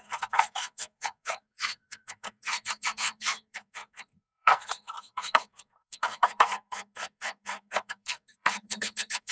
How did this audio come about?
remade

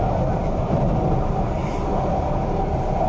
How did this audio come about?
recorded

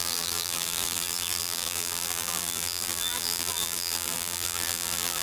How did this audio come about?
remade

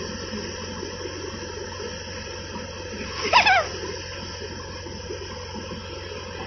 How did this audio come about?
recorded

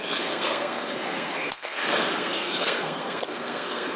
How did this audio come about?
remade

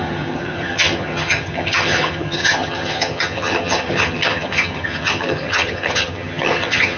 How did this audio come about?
remade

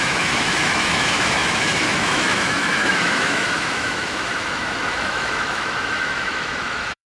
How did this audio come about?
remade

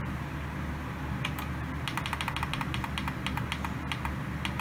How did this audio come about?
recorded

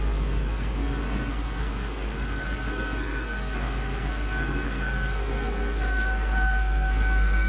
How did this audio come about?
remade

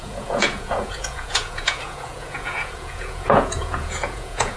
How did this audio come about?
remade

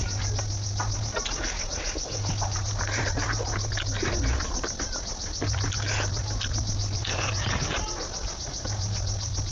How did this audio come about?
recorded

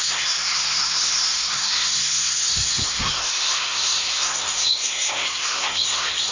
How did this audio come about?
remade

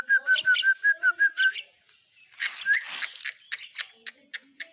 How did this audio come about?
recorded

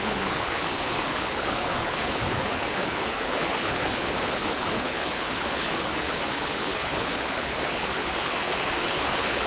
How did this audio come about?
remade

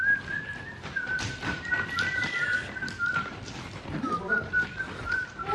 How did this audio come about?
remade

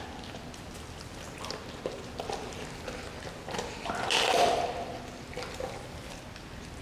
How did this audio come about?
recorded